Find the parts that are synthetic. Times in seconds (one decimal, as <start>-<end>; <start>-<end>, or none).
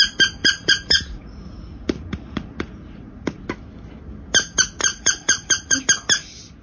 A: 0.4-3.5; 4.8-5.8